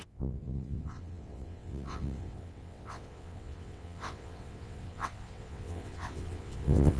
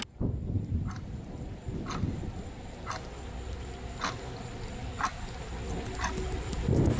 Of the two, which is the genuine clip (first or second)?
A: second